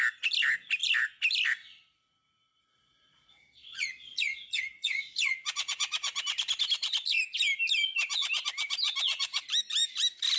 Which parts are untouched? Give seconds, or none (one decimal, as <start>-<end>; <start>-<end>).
0.0-2.5; 6.2-10.4